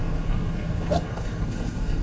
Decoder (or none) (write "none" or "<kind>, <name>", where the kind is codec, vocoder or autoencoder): codec, SNAC